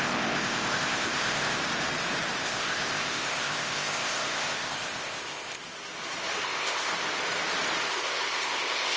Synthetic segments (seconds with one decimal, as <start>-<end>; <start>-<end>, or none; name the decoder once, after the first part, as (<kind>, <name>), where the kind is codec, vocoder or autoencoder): 0.0-1.6 (codec, ZipCodec); 2.4-5.6; 6.4-6.9; 7.9-9.0